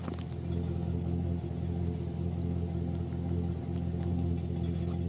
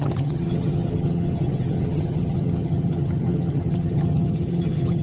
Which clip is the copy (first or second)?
second